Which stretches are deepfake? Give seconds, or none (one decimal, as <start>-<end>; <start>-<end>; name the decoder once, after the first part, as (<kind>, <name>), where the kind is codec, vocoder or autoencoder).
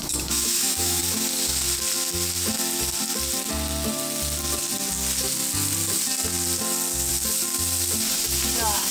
0.0-1.0 (autoencoder, DAC-VAE)